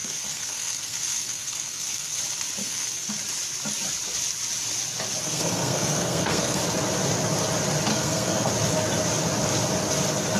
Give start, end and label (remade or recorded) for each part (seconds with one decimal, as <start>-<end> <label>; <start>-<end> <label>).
0.0-2.2 remade; 2.2-2.6 recorded; 2.6-3.1 remade; 3.1-5.2 recorded; 5.2-6.6 remade; 6.6-7.9 recorded; 7.9-8.5 remade; 8.5-10.4 recorded